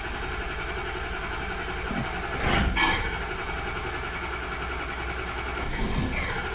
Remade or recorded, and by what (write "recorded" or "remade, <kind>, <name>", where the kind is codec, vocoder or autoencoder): recorded